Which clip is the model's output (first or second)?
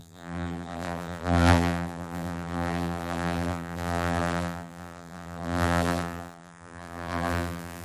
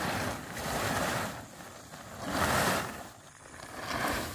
first